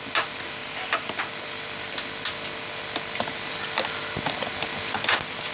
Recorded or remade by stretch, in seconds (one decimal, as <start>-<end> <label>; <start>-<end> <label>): 0.0-5.5 recorded